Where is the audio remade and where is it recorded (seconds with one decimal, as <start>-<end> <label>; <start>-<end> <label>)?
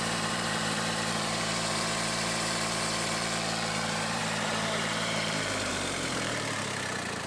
0.0-3.2 remade; 3.2-3.7 recorded; 3.7-7.3 remade